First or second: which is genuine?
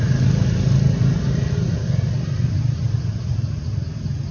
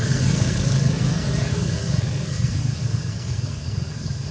first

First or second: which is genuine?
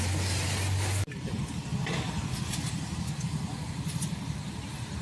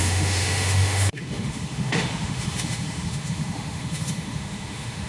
first